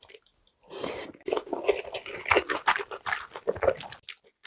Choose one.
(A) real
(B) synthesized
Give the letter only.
A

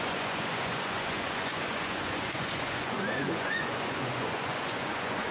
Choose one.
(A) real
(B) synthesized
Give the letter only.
B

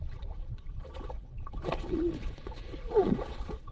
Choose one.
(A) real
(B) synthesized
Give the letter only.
B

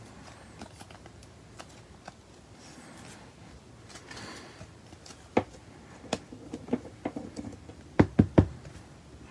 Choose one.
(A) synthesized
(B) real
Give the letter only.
B